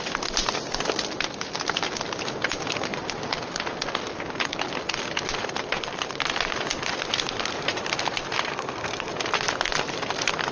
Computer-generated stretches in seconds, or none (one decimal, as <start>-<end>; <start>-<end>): 8.5-9.1